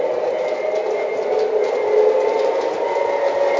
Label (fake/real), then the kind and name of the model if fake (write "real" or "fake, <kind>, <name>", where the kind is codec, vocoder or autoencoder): real